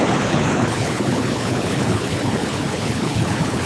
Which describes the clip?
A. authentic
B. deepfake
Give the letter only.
B